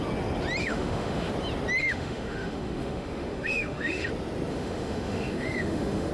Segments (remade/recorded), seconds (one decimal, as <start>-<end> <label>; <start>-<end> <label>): 0.0-0.6 recorded; 0.6-1.3 remade; 1.3-1.8 recorded; 1.8-4.1 remade; 4.1-4.5 recorded; 4.5-6.1 remade